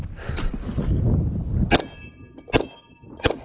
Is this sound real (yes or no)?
yes